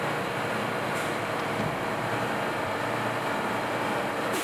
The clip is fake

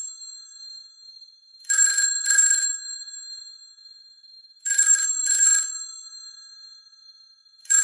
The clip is fake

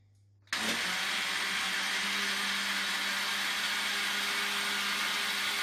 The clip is real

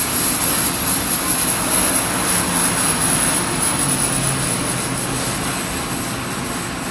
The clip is real